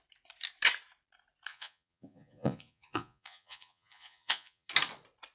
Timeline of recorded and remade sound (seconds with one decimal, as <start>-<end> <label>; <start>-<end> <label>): 0.0-1.5 recorded; 1.5-4.7 remade; 4.7-5.3 recorded